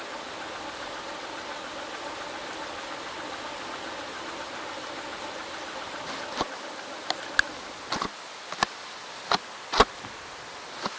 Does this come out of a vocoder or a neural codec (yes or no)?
no